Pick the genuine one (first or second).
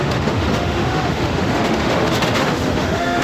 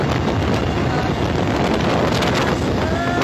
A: second